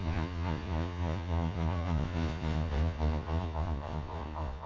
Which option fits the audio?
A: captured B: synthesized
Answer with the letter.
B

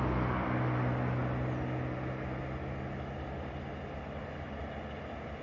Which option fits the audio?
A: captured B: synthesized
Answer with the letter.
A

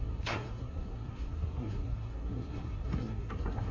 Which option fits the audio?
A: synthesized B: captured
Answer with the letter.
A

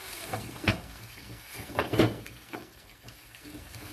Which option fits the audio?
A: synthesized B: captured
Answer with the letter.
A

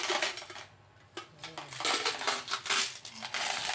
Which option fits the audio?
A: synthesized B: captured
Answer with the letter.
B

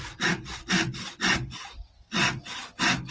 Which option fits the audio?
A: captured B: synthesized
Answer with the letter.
A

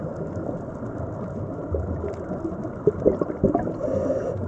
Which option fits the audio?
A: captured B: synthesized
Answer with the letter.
A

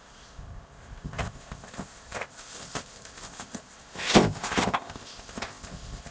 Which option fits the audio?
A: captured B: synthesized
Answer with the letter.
B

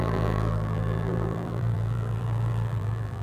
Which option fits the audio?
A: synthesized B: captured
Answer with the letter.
A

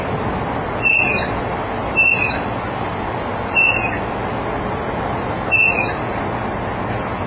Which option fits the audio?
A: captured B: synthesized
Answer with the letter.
A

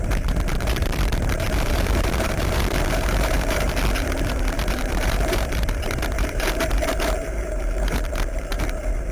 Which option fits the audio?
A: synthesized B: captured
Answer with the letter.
A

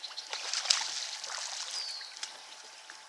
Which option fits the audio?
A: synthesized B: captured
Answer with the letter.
B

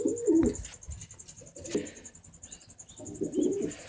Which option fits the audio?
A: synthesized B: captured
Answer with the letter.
B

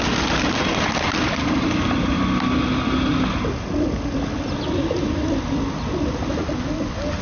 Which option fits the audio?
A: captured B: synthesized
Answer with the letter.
A